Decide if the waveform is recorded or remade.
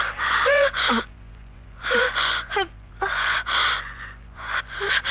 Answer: remade